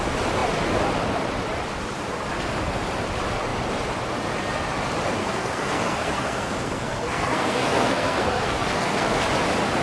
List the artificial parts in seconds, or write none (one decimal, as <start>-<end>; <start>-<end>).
5.2-9.2